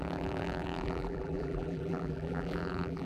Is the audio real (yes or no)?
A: no